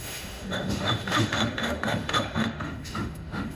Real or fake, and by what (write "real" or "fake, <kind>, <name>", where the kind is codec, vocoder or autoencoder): fake, autoencoder, DAC-VAE